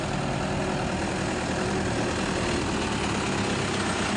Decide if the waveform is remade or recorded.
recorded